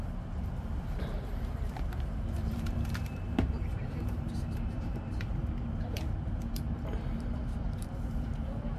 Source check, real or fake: fake